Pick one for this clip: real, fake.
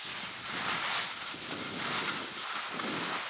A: real